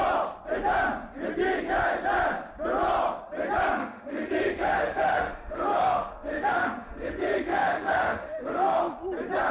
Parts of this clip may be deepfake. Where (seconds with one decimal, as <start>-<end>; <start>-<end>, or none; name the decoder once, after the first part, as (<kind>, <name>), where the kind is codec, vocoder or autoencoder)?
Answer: 3.8-8.8 (autoencoder, DAC-VAE)